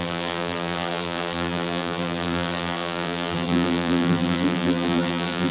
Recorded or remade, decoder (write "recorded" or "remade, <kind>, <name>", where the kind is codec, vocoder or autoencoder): remade, vocoder, BigVGAN v2